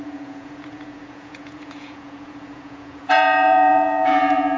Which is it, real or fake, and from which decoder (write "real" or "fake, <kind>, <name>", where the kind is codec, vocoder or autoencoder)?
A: fake, vocoder, Vocos